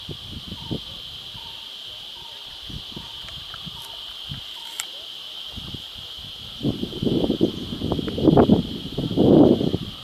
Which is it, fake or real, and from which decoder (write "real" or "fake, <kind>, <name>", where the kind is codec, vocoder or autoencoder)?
real